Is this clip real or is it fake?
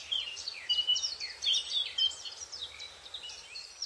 fake